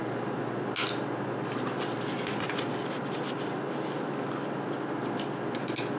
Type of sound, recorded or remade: recorded